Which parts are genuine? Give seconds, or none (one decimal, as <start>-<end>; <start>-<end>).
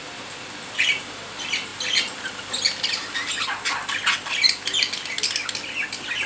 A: 0.0-6.3